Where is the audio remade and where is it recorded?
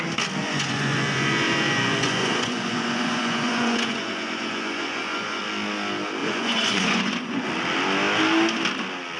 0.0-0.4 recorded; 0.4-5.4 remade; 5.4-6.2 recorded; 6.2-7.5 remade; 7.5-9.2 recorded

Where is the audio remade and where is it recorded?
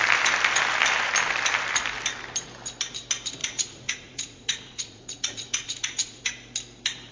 0.0-3.4 recorded; 3.4-6.2 remade; 6.2-7.1 recorded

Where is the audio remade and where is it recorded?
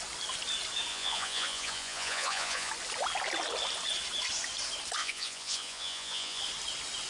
0.0-0.9 recorded; 0.9-2.7 remade; 2.7-5.0 recorded; 5.0-6.4 remade; 6.4-7.1 recorded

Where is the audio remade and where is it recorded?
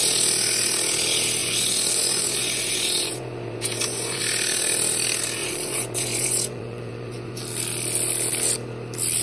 0.0-1.4 recorded; 1.4-4.2 remade; 4.2-5.4 recorded; 5.4-7.4 remade; 7.4-9.2 recorded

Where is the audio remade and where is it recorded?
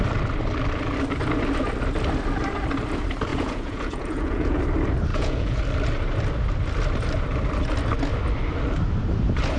0.0-3.3 recorded; 3.3-4.6 remade; 4.6-5.1 recorded; 5.1-5.6 remade; 5.6-9.6 recorded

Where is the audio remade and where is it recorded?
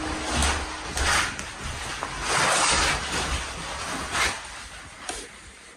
0.0-5.8 recorded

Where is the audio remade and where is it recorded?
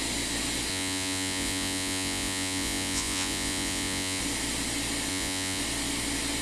0.0-0.7 recorded; 0.7-4.2 remade; 4.2-5.1 recorded; 5.1-5.6 remade; 5.6-6.4 recorded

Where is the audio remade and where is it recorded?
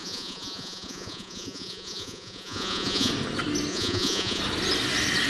0.0-3.1 remade; 3.1-3.7 recorded; 3.7-4.4 remade; 4.4-5.3 recorded